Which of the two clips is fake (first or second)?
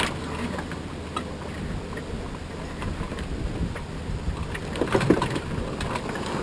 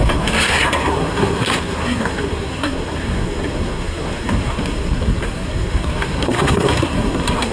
second